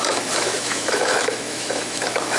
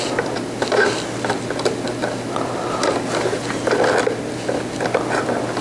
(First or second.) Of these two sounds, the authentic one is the second